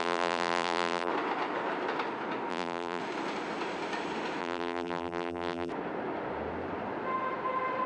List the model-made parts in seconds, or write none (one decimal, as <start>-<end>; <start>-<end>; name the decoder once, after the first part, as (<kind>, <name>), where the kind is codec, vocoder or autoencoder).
0.0-1.1 (vocoder, BigVGAN v2); 2.5-3.0; 4.4-5.7